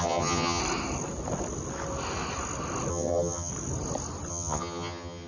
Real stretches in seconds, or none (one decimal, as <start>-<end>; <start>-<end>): 0.6-2.9; 3.5-4.3